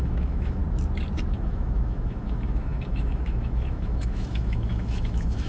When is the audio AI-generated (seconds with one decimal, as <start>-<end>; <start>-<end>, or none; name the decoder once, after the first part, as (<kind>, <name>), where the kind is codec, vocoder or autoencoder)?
0.0-0.6 (autoencoder, DAC-VAE); 1.3-5.5